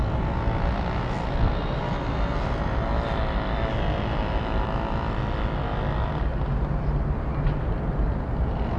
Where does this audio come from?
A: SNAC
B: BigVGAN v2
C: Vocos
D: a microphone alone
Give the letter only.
D